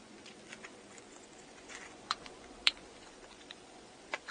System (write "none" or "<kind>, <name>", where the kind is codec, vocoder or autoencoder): vocoder, Vocos